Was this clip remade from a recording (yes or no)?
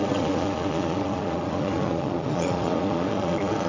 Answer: yes